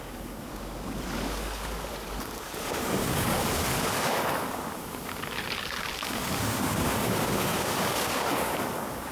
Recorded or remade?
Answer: remade